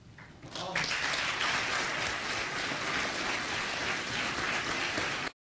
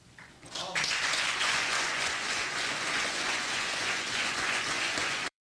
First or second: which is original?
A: first